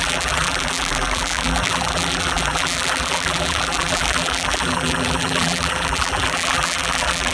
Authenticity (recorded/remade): remade